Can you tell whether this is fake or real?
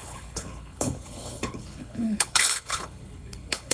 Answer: fake